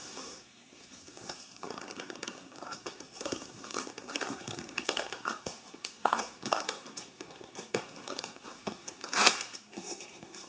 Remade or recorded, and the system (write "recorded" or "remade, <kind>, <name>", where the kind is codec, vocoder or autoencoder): remade, codec, SNAC